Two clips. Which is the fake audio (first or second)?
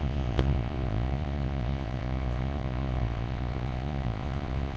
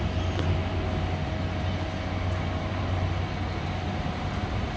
first